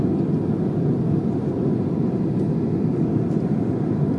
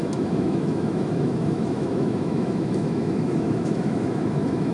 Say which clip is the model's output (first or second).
second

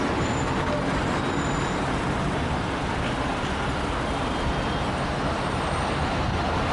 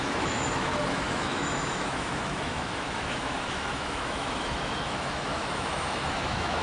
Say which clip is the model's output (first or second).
second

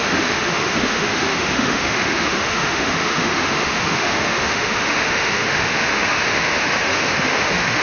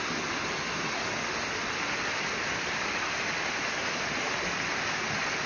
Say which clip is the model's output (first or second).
first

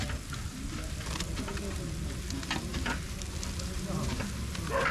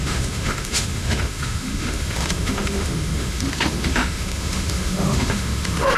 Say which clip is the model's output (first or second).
second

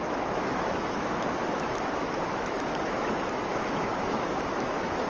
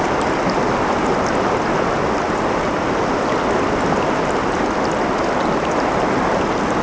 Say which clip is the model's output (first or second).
first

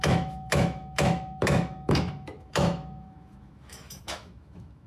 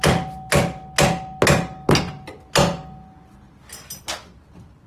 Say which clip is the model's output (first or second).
first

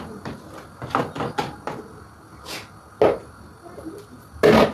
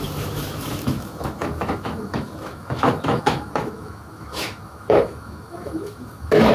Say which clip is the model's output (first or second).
second